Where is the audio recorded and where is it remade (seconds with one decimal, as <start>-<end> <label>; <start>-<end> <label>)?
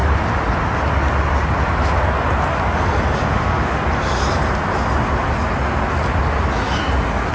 0.0-3.2 recorded; 3.2-3.8 remade; 3.8-7.3 recorded